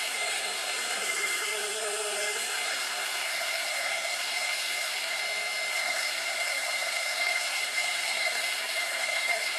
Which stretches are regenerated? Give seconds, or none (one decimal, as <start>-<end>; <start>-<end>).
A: 0.0-5.2; 5.7-9.6